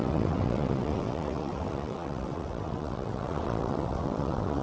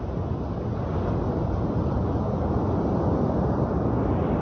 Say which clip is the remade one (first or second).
first